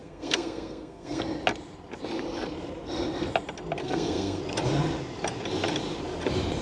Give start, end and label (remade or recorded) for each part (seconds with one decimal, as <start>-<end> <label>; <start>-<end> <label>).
0.0-1.2 remade; 1.2-3.8 recorded; 3.8-4.4 remade; 4.4-6.6 recorded

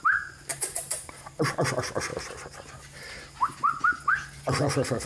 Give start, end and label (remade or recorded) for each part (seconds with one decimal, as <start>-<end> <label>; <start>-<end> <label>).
0.0-0.5 recorded; 0.5-1.7 remade; 1.7-5.1 recorded

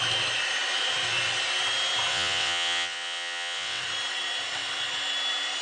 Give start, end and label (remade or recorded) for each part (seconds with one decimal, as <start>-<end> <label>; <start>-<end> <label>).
0.0-2.1 recorded; 2.1-3.8 remade; 3.8-5.6 recorded

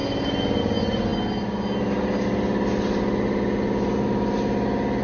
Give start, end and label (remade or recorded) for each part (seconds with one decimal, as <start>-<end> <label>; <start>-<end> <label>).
0.0-5.0 recorded

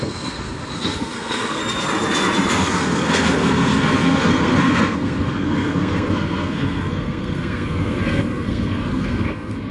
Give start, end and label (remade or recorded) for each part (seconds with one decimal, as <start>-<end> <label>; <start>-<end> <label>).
0.0-1.6 remade; 1.6-2.5 recorded; 2.5-9.7 remade

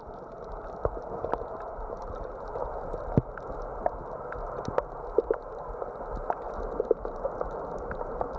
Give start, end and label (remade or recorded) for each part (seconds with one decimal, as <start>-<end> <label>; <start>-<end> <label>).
0.0-2.5 remade; 2.5-6.8 recorded; 6.8-8.4 remade

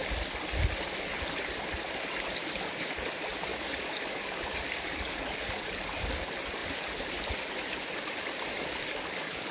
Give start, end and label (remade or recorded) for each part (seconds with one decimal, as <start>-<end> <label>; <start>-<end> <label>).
0.0-3.5 recorded; 3.5-6.0 remade; 6.0-8.5 recorded; 8.5-9.5 remade